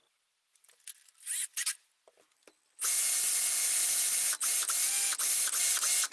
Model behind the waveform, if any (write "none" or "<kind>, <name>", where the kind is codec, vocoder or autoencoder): none